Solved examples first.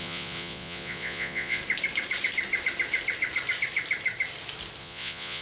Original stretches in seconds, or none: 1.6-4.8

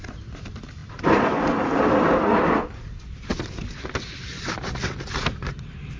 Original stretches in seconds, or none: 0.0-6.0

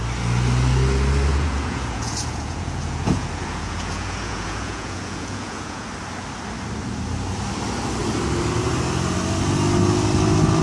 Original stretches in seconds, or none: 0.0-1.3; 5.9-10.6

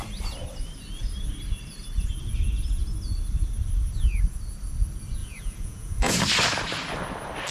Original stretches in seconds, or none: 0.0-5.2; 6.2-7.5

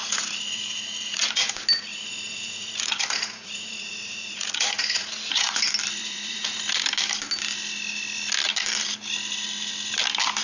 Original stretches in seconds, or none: 1.5-1.9; 5.6-6.0; 6.6-10.4